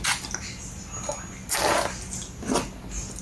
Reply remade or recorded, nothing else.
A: recorded